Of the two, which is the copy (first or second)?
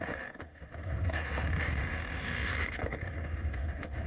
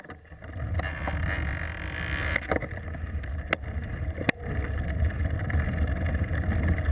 first